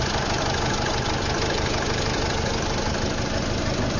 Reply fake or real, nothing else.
real